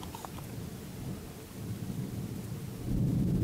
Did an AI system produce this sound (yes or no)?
no